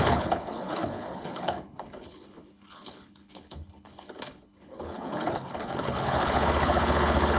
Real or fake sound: fake